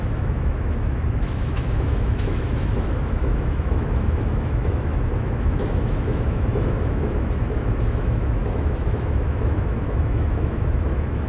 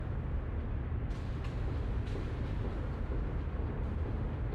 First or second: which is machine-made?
first